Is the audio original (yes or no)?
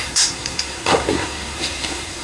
no